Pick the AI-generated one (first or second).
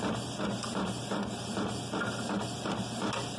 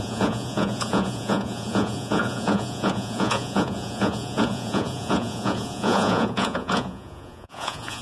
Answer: second